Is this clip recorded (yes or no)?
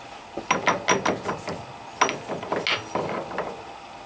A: yes